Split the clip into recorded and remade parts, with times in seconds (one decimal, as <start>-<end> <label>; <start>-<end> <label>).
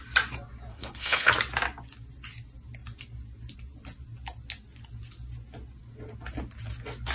0.0-0.7 recorded; 0.7-1.3 remade; 1.3-7.1 recorded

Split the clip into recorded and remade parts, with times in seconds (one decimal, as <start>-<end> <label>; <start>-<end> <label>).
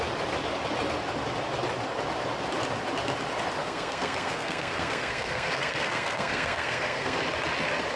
0.0-3.6 recorded; 3.6-7.2 remade; 7.2-8.0 recorded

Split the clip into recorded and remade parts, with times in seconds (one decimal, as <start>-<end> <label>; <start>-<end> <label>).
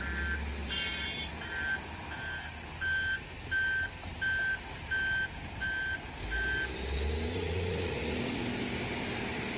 0.0-7.3 recorded; 7.3-8.4 remade; 8.4-9.6 recorded